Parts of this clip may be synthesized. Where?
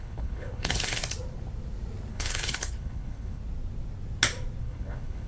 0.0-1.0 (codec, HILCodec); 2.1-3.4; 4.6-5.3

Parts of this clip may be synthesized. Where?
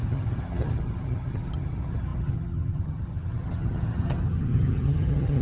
0.0-5.4 (vocoder, HiFi-GAN)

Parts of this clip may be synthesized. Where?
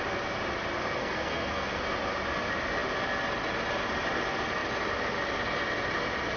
1.0-1.8 (codec, SNAC)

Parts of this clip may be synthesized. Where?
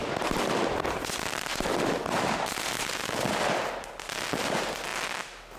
none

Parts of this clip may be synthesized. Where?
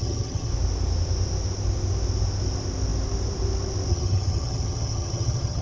0.0-0.5 (vocoder, HiFi-GAN); 3.9-5.6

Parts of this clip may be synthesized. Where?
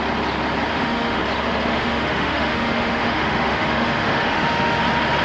0.7-1.2 (autoencoder, DAC-VAE); 1.7-4.8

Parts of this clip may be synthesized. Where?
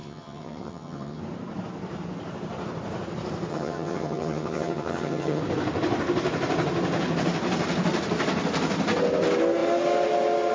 0.0-1.2 (vocoder, HiFi-GAN); 3.5-5.4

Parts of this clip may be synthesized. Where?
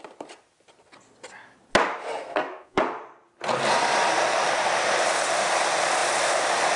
2.2-2.8 (codec, SNAC)